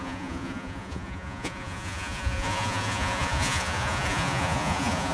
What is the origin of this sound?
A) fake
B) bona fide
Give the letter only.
A